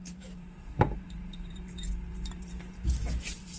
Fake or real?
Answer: fake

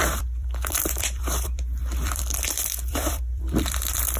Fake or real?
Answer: fake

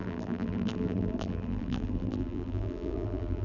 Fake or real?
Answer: fake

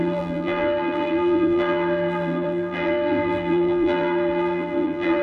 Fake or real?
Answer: fake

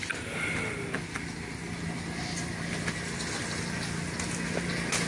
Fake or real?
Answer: real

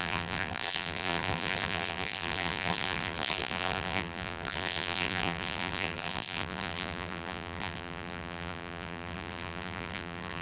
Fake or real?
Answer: fake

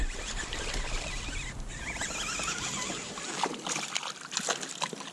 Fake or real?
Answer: real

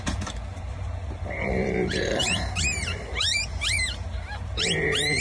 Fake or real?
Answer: fake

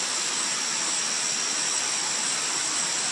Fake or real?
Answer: real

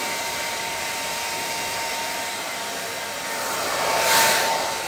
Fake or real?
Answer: fake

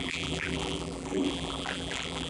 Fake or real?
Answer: fake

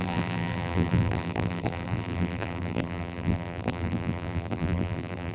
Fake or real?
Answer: fake